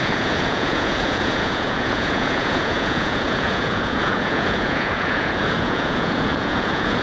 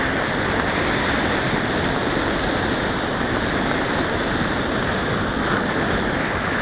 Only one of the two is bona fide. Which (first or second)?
second